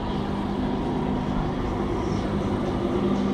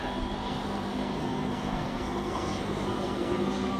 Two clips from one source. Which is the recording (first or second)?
first